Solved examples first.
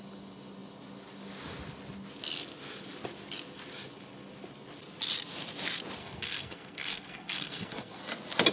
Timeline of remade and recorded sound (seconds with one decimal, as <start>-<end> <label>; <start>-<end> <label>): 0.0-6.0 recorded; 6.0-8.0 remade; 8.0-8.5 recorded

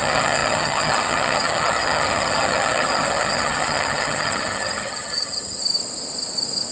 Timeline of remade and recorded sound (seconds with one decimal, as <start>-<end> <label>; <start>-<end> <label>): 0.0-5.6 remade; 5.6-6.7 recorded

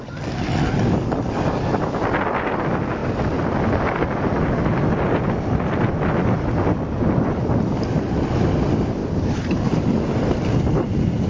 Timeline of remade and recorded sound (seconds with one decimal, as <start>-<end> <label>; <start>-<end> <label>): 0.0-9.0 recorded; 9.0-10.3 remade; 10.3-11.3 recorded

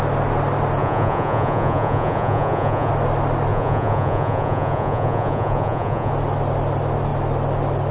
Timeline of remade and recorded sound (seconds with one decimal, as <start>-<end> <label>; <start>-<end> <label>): 0.0-0.8 recorded; 0.8-2.9 remade; 2.9-3.5 recorded; 3.5-6.1 remade; 6.1-7.9 recorded